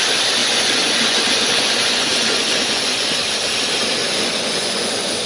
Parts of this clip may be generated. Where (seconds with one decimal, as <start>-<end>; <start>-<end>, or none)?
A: 0.4-3.2; 4.0-5.3